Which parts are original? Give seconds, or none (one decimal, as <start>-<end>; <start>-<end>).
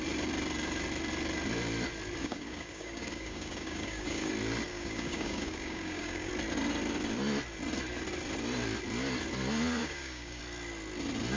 0.0-2.2; 4.3-4.7; 6.3-9.8; 10.4-11.4